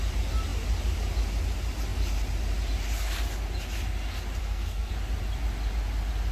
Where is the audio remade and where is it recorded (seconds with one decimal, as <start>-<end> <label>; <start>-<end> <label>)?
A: 0.0-4.4 recorded; 4.4-4.9 remade; 4.9-6.3 recorded